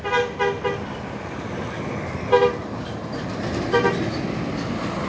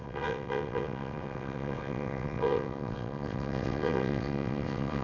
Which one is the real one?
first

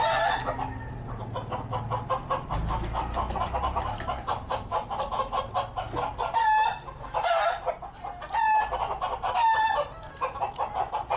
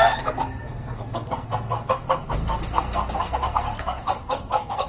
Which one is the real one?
first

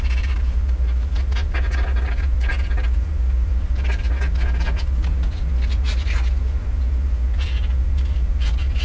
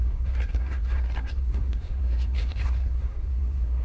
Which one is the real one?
first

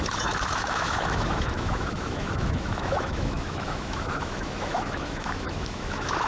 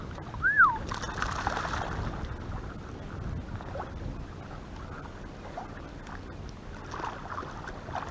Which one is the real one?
second